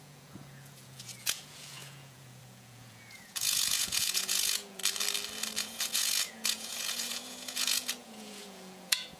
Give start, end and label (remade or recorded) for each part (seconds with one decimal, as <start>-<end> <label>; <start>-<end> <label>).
0.0-4.8 remade; 4.8-5.6 recorded; 5.6-9.2 remade